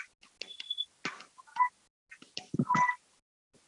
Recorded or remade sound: recorded